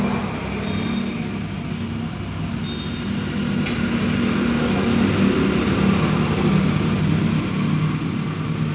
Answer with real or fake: real